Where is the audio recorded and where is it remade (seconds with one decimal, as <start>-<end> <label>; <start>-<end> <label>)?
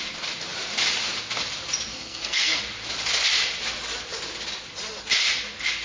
0.0-1.9 recorded; 1.9-2.6 remade; 2.6-5.8 recorded